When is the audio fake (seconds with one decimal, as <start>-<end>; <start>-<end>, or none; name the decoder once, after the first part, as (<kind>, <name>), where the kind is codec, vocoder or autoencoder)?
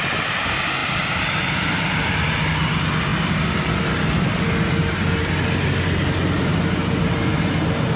none